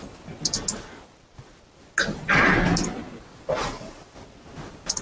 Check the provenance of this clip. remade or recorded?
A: recorded